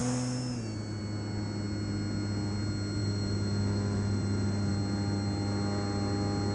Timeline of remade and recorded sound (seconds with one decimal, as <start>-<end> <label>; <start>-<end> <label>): 0.0-3.0 recorded; 3.0-4.7 remade; 4.7-6.5 recorded